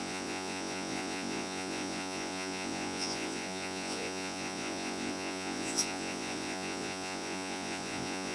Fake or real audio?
fake